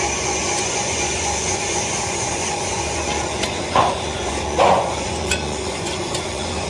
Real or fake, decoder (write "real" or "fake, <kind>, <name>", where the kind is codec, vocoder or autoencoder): fake, vocoder, Vocos